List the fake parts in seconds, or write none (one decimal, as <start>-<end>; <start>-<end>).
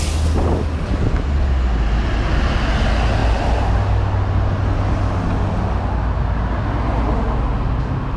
none